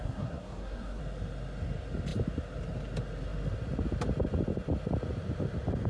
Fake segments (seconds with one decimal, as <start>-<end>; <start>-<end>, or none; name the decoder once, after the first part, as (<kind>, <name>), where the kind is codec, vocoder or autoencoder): 0.0-1.0 (codec, SNAC)